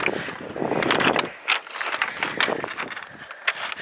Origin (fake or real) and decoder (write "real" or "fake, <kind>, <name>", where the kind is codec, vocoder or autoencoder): real